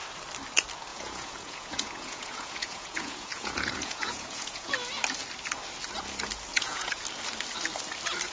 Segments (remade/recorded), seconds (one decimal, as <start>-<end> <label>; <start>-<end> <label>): 0.0-0.9 recorded; 0.9-4.7 remade; 4.7-6.5 recorded; 6.5-7.0 remade; 7.0-8.3 recorded